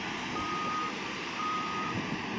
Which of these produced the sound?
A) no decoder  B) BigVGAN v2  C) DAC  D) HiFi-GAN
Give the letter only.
B